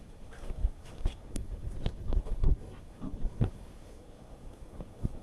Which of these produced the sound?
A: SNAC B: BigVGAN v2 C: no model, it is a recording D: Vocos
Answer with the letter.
A